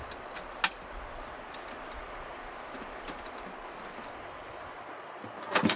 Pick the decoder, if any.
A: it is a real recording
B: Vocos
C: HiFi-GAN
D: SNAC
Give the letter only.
A